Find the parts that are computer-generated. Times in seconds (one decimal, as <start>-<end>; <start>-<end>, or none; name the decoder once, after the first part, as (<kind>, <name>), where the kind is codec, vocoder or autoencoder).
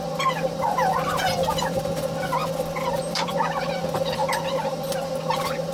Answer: 0.0-2.4 (vocoder, BigVGAN v2); 2.9-5.7